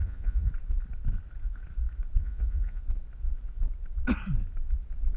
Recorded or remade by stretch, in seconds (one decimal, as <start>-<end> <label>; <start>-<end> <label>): 0.0-0.5 remade; 0.5-2.2 recorded; 2.2-2.8 remade; 2.8-5.2 recorded